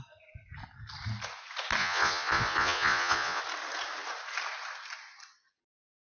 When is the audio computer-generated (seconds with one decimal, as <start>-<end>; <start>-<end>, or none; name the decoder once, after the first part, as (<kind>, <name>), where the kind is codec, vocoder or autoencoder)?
1.8-3.4 (vocoder, Vocos)